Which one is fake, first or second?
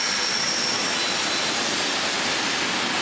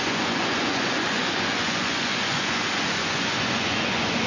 second